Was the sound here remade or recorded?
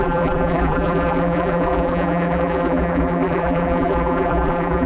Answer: remade